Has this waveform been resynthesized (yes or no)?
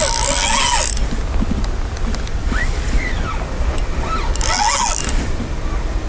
no